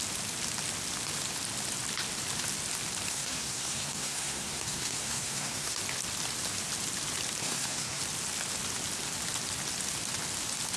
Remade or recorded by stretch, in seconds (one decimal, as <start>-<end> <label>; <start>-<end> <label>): 0.0-3.1 recorded; 3.1-5.8 remade; 5.8-7.4 recorded; 7.4-8.0 remade; 8.0-10.8 recorded